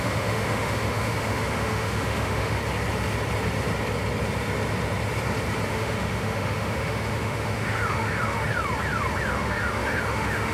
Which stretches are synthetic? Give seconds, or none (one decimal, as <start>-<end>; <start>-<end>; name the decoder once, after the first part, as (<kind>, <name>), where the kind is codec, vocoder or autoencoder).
0.0-2.6 (autoencoder, DAC-VAE); 5.7-8.5; 9.3-10.5